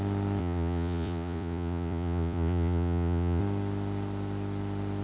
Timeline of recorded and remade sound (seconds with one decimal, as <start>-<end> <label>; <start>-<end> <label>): 0.0-0.4 recorded; 0.4-3.4 remade; 3.4-5.0 recorded